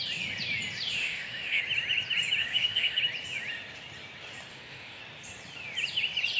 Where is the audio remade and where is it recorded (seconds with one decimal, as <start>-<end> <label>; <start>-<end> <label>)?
0.0-1.0 recorded; 1.0-1.6 remade; 1.6-2.4 recorded; 2.4-3.0 remade; 3.0-4.5 recorded; 4.5-5.0 remade; 5.0-6.4 recorded